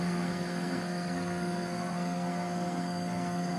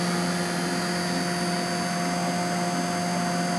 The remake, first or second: first